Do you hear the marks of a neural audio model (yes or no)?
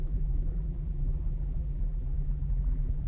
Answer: yes